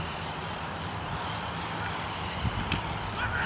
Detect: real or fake real